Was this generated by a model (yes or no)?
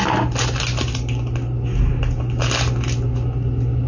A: no